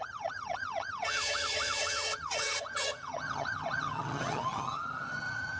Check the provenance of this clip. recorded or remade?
remade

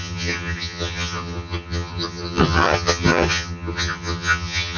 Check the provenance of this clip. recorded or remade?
remade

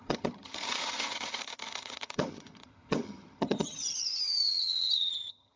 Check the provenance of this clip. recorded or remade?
remade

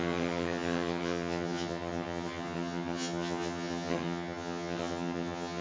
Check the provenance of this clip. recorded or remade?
remade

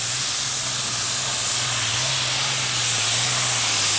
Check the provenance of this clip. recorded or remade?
recorded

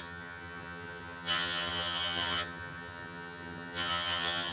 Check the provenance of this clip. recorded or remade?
remade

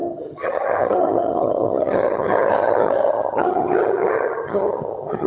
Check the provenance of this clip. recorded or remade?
remade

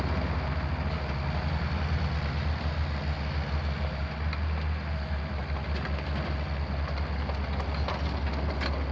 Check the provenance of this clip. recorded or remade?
recorded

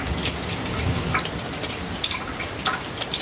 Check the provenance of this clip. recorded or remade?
recorded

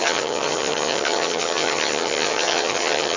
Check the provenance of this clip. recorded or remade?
remade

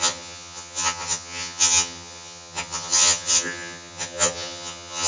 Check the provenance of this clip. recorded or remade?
remade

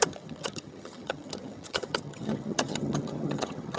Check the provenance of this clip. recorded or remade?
remade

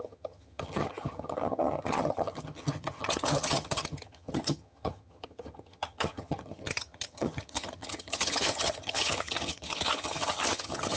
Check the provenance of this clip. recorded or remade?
remade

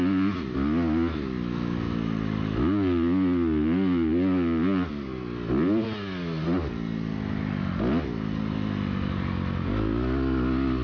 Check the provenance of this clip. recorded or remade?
recorded